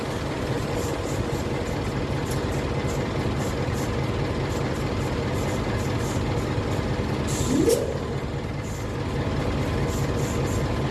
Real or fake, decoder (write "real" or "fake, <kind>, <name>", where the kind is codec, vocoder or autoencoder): real